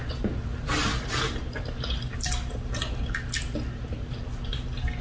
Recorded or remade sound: recorded